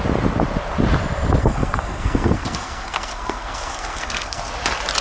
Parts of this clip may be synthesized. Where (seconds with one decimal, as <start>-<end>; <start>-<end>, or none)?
1.4-4.4